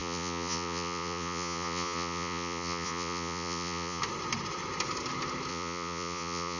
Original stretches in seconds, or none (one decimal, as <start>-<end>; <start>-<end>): 4.0-5.5